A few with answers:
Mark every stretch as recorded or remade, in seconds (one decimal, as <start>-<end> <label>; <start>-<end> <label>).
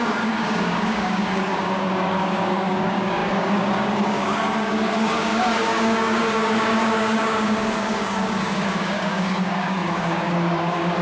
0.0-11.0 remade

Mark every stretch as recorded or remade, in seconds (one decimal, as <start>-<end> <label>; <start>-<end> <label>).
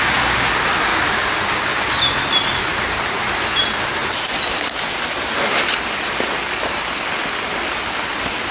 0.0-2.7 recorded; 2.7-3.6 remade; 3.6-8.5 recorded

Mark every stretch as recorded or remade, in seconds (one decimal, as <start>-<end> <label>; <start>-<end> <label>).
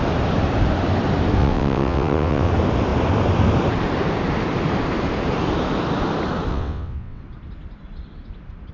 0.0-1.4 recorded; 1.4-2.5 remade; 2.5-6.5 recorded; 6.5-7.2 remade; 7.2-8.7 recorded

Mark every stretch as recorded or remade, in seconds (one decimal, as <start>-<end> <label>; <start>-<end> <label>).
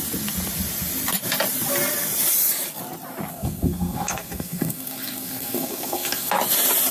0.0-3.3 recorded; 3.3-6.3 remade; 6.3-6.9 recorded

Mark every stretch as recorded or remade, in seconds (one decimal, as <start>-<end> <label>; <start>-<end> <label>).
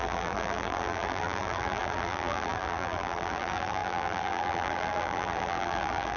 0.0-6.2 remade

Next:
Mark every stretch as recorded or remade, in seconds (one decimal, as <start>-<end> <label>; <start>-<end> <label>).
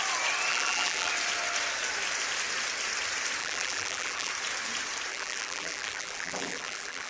0.0-0.5 recorded; 0.5-1.1 remade; 1.1-3.4 recorded; 3.4-4.3 remade; 4.3-5.1 recorded; 5.1-7.1 remade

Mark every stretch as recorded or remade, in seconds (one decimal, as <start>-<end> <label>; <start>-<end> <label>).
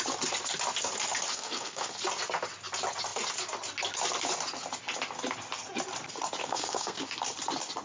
0.0-1.3 recorded; 1.3-2.0 remade; 2.0-6.4 recorded; 6.4-7.0 remade; 7.0-7.8 recorded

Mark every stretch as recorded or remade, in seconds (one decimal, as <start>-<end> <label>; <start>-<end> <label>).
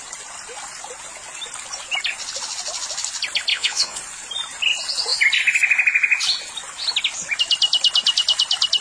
0.0-3.5 recorded; 3.5-4.0 remade; 4.0-8.8 recorded